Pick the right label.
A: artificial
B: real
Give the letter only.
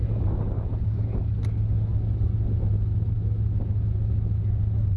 B